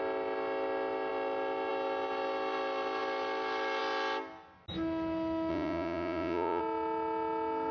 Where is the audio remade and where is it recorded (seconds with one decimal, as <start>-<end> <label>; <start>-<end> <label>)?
0.0-5.5 recorded; 5.5-6.6 remade; 6.6-7.7 recorded